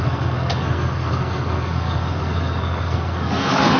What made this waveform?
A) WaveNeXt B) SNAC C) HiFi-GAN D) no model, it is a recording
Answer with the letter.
B